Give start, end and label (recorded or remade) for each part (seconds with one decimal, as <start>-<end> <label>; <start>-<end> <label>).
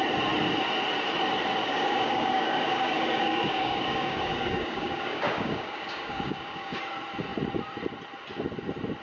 0.0-1.6 recorded; 1.6-6.8 remade; 6.8-9.0 recorded